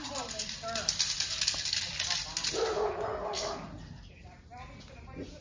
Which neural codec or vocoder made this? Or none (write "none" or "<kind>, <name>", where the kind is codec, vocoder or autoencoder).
none